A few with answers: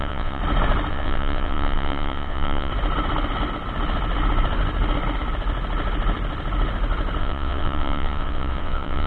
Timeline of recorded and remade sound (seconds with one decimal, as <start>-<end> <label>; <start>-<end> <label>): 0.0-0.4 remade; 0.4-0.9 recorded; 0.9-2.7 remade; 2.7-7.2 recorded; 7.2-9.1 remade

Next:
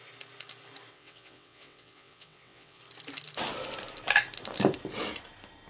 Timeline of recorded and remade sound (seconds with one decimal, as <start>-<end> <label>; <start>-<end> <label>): 0.0-0.9 recorded; 0.9-2.8 remade; 2.8-5.7 recorded

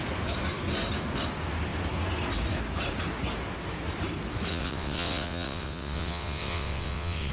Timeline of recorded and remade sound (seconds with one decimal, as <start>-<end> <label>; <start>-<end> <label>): 0.0-4.5 recorded; 4.5-7.3 remade